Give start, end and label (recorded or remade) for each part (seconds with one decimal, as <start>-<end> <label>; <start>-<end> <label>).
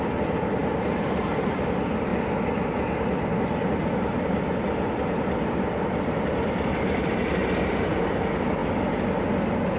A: 0.0-0.6 recorded; 0.6-1.5 remade; 1.5-8.6 recorded; 8.6-9.2 remade; 9.2-9.8 recorded